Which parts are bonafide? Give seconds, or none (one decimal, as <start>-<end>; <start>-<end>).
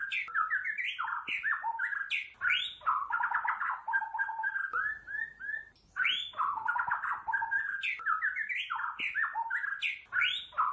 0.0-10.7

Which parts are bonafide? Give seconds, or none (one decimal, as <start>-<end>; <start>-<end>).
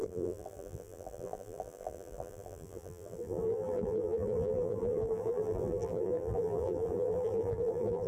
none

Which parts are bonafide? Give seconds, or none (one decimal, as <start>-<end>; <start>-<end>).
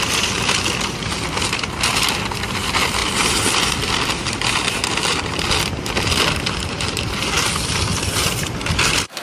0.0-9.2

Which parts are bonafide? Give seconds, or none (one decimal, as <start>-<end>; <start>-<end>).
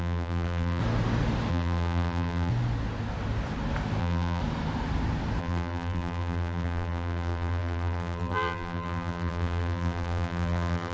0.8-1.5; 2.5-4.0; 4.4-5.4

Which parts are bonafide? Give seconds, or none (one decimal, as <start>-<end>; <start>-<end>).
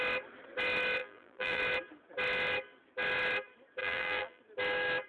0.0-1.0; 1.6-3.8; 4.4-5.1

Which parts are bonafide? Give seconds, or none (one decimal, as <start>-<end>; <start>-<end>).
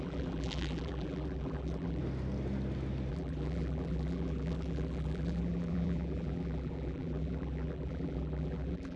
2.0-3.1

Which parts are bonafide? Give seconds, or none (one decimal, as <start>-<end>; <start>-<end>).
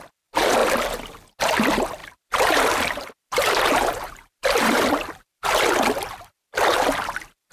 0.0-2.0; 4.8-7.5